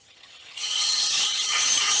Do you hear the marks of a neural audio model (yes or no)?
yes